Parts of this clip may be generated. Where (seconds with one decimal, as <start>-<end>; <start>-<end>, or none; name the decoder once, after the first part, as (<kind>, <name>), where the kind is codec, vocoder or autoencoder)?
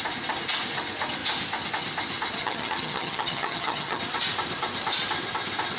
2.4-4.0 (vocoder, HiFi-GAN)